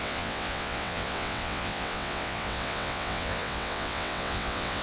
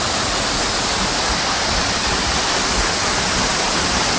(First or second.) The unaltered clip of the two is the second